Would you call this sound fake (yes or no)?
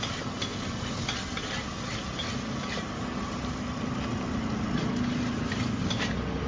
no